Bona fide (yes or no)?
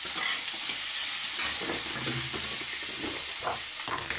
yes